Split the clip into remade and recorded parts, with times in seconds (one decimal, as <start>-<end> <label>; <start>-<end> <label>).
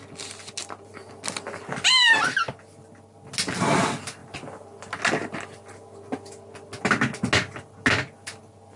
0.0-8.8 recorded